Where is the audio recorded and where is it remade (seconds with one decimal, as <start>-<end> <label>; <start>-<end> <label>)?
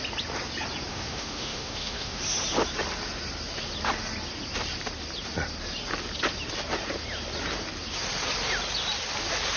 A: 0.0-0.9 recorded; 0.9-2.2 remade; 2.2-9.6 recorded